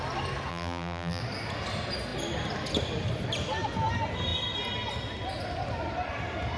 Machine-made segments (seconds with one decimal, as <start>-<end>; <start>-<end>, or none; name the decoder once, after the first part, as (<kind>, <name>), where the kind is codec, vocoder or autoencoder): 0.5-1.2 (vocoder, BigVGAN v2)